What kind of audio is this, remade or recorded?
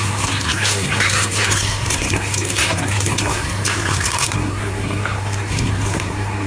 remade